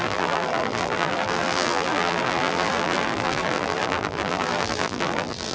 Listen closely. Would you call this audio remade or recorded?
remade